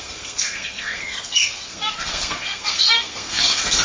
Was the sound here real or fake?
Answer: fake